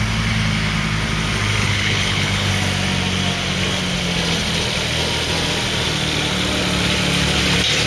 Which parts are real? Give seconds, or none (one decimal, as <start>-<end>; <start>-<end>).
0.0-1.6; 2.5-7.9